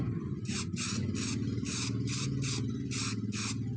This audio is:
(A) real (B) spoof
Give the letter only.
A